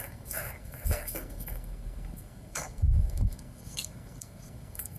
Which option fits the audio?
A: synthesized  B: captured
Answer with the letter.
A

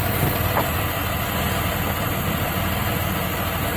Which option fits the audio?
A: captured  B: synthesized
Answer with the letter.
A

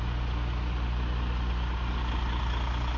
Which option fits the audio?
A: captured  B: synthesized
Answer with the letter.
A